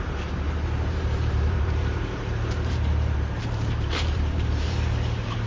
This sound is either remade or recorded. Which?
remade